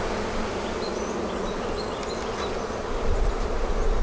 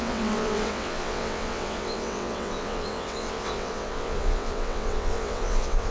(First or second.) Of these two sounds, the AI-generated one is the second